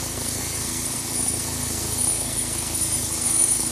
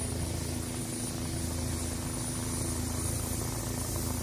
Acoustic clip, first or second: second